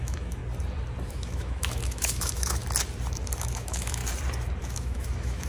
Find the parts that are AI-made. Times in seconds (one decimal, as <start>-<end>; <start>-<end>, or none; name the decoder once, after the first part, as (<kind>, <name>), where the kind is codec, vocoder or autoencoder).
0.0-0.4 (autoencoder, DAC-VAE); 1.1-2.6; 3.4-4.0; 4.6-5.5